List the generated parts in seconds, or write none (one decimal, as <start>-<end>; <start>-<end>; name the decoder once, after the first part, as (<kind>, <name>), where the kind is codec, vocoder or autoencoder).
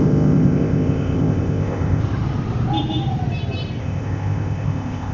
0.0-2.0 (codec, ZipCodec); 3.8-5.1